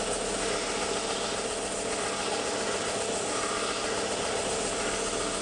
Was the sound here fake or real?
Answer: real